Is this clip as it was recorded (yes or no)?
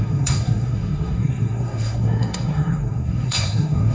no